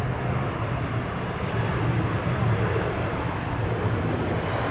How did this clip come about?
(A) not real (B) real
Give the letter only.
B